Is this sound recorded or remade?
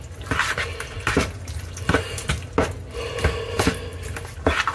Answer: recorded